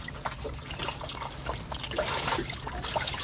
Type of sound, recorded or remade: recorded